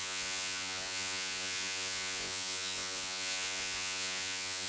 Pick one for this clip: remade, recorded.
remade